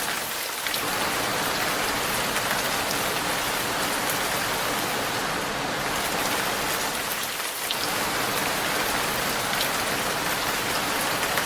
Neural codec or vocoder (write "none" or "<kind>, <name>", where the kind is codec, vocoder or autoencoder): none